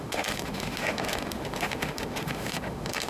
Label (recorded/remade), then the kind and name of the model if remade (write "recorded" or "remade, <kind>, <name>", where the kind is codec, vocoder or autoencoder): remade, autoencoder, DAC-VAE